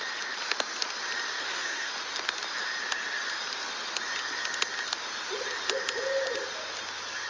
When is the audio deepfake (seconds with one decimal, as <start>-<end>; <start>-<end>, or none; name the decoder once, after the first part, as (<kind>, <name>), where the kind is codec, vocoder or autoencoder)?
1.4-1.9 (codec, SNAC)